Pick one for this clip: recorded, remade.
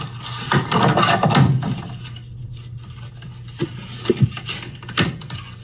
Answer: recorded